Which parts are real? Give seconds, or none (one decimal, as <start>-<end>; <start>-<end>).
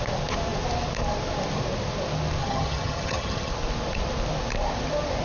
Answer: 0.0-2.4; 3.5-5.2